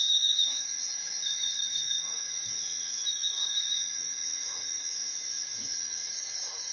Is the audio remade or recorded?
remade